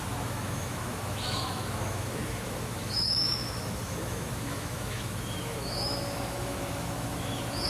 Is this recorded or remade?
remade